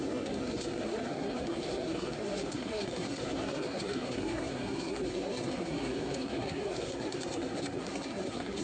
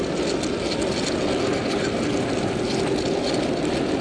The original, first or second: second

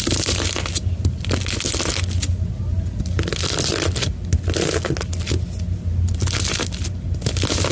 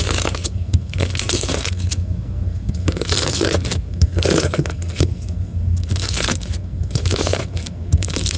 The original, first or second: first